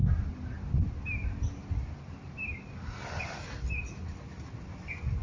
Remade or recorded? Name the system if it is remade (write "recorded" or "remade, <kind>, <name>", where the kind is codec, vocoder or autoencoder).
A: recorded